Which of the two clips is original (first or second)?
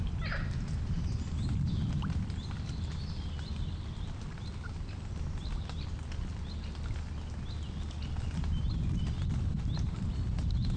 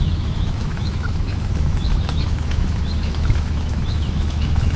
first